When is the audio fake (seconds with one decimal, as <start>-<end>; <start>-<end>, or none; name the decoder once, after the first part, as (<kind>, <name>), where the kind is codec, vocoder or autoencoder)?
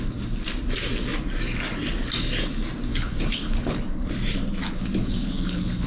2.9-4.1 (codec, HILCodec); 4.6-5.9